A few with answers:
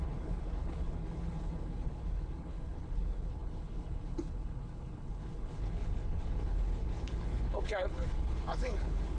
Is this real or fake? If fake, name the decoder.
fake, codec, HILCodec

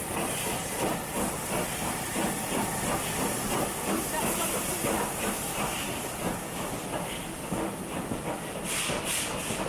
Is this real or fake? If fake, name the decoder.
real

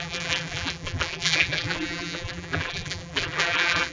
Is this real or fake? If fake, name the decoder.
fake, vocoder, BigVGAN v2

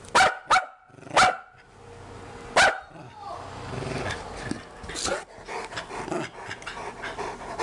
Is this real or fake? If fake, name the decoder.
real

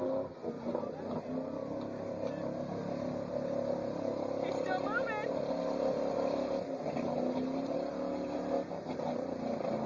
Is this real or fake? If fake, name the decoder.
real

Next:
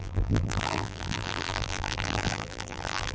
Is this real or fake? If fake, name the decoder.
fake, vocoder, BigVGAN v2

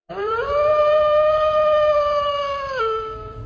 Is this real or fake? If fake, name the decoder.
fake, vocoder, BigVGAN v2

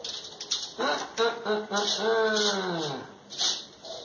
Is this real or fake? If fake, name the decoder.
real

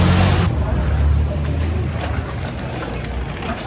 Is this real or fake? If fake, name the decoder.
real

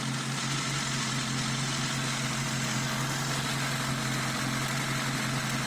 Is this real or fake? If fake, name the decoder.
real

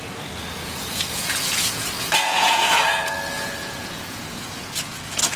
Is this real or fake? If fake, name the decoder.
fake, vocoder, Vocos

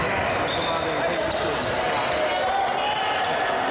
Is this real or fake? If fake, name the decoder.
real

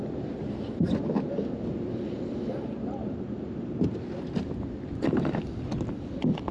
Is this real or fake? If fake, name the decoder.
real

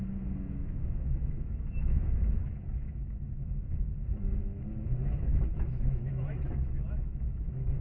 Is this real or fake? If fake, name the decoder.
fake, autoencoder, DAC-VAE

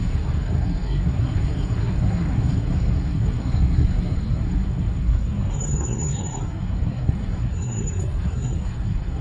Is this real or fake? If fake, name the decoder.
fake, codec, SNAC